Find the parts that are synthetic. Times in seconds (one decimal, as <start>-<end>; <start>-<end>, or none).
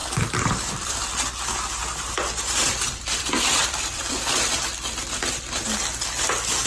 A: 0.0-0.9; 1.8-4.2